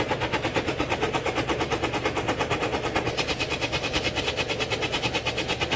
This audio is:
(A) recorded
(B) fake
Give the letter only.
B